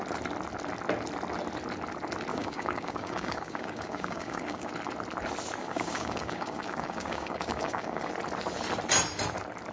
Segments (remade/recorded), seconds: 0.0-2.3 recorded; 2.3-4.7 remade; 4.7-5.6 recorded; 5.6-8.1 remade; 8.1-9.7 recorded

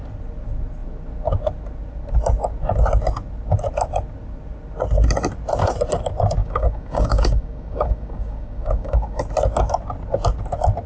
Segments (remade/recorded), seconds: 0.0-6.4 recorded; 6.4-9.2 remade; 9.2-10.9 recorded

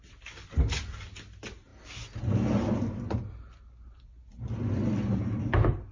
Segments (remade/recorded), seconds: 0.0-5.9 recorded

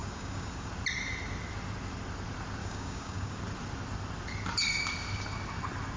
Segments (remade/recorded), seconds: 0.0-0.7 remade; 0.7-2.6 recorded; 2.6-3.4 remade; 3.4-6.0 recorded

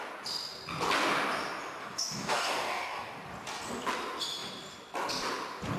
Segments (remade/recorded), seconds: 0.0-1.8 recorded; 1.8-3.2 remade; 3.2-5.8 recorded

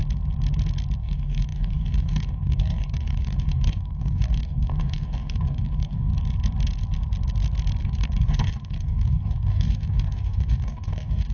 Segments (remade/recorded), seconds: 0.0-1.0 recorded; 1.0-6.1 remade; 6.1-7.8 recorded; 7.8-11.3 remade

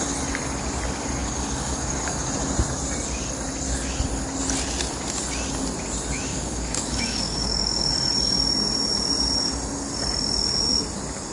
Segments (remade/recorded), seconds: 0.0-1.2 recorded; 1.2-2.3 remade; 2.3-6.3 recorded; 6.3-7.9 remade; 7.9-11.3 recorded